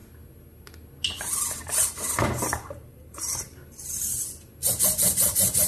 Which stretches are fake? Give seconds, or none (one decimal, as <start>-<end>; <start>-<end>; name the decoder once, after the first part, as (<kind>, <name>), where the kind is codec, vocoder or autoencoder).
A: 1.6-3.5 (vocoder, BigVGAN v2); 4.7-5.7